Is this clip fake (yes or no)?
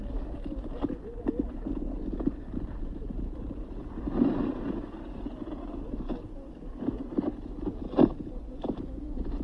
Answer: no